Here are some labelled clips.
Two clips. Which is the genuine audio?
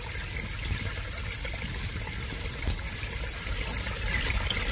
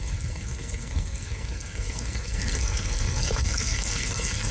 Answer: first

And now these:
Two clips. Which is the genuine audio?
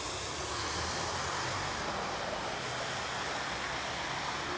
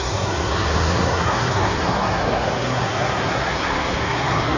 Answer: first